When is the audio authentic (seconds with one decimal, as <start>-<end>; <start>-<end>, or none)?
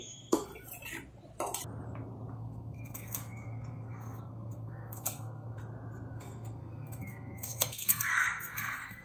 0.5-2.3; 5.6-6.1